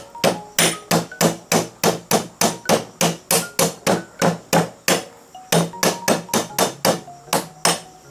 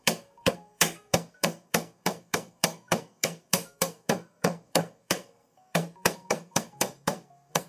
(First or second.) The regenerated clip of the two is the second